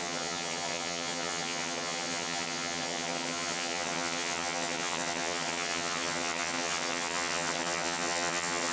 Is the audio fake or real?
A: fake